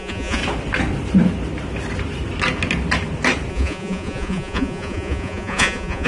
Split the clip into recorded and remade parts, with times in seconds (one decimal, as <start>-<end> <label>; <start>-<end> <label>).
0.0-0.4 remade; 0.4-3.5 recorded; 3.5-6.1 remade